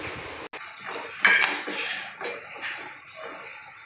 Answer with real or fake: real